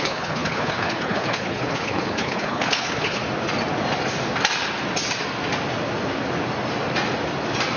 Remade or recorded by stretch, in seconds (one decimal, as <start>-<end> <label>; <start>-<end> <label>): 0.0-3.2 remade; 3.2-7.8 recorded